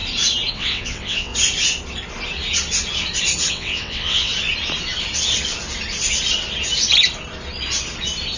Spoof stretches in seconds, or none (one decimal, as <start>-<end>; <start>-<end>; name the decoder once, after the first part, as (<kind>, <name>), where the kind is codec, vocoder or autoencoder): 0.5-1.3 (vocoder, WaveNeXt); 3.5-4.3